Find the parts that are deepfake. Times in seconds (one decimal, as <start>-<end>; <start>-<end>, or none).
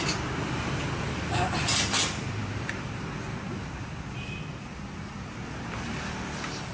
none